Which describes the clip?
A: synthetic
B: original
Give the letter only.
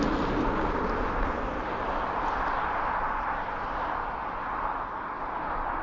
B